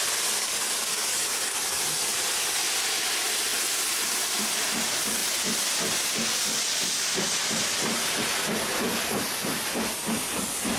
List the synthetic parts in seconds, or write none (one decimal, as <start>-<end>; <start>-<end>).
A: 0.4-1.8